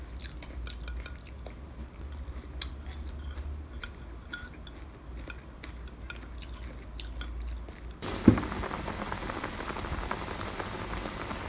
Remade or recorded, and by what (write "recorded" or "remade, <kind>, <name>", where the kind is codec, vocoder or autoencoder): recorded